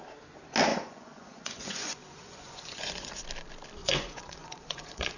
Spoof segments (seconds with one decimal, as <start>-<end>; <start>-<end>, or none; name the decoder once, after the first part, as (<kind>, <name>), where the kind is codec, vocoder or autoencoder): 0.7-3.1 (vocoder, Vocos); 3.8-5.2